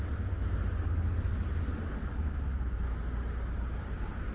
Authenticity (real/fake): real